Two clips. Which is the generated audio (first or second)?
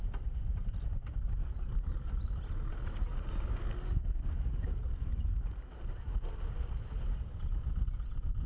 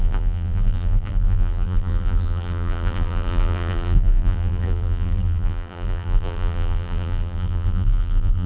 second